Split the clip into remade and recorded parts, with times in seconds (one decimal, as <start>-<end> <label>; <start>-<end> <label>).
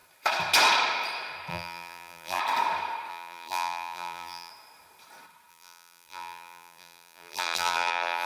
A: 0.0-1.5 recorded; 1.5-2.4 remade; 2.4-3.1 recorded; 3.1-4.5 remade; 4.5-5.5 recorded; 5.5-8.3 remade